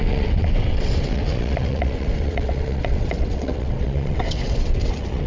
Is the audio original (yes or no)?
no